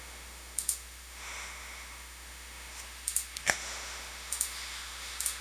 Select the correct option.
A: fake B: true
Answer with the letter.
A